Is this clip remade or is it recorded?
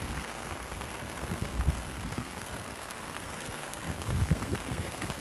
remade